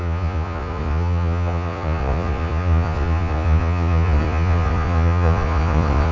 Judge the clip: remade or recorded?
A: remade